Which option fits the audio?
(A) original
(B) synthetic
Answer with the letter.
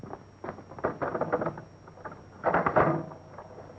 A